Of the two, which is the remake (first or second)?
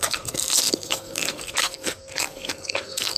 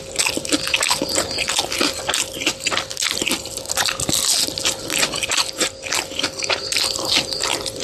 first